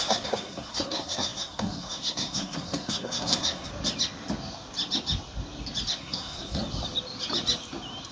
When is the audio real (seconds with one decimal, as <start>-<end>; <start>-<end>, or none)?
3.7-6.0; 6.6-8.1